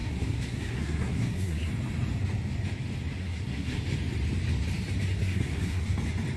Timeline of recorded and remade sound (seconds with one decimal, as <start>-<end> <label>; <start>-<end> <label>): 0.0-1.7 remade; 1.7-3.2 recorded; 3.2-3.8 remade; 3.8-5.2 recorded; 5.2-5.8 remade; 5.8-6.4 recorded